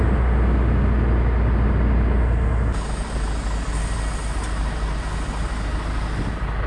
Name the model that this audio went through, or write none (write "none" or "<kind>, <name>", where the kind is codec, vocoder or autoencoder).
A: none